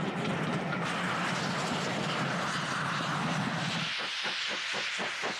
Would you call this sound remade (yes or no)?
no